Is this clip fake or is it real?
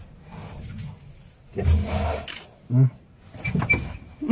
real